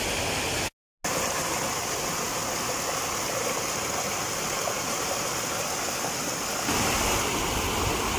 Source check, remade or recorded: recorded